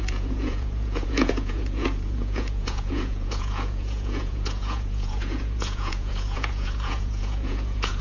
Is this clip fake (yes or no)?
yes